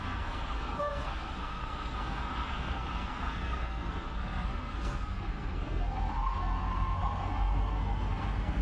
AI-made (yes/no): yes